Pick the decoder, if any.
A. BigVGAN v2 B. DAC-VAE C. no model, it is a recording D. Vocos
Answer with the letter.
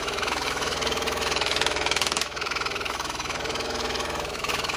B